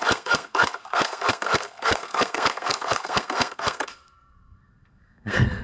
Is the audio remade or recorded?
remade